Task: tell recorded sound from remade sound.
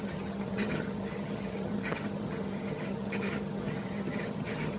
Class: remade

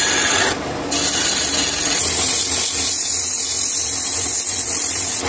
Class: recorded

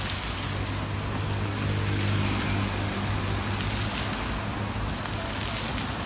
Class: recorded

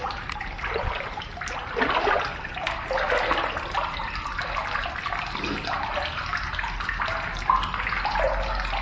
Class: recorded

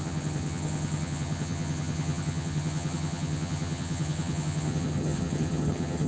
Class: remade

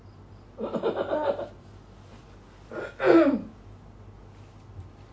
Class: recorded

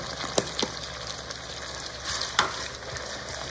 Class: recorded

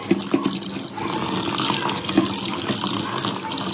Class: recorded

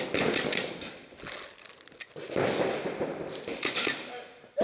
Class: recorded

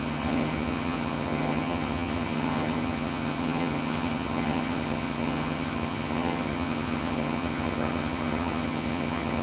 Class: remade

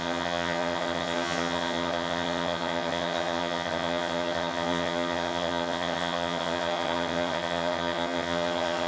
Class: remade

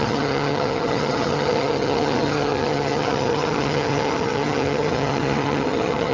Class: remade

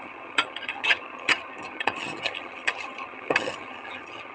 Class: remade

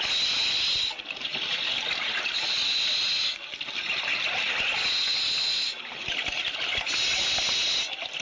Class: recorded